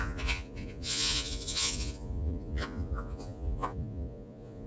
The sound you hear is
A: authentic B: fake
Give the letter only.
B